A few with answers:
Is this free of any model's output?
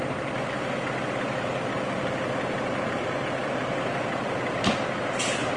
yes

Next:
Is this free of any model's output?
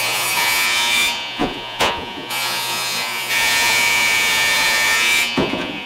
no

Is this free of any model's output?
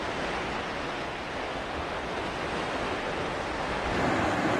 yes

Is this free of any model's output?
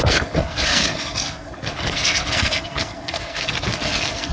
no